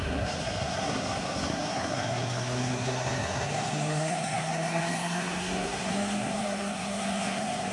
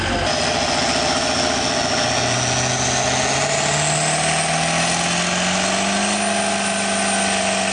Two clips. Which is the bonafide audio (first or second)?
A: second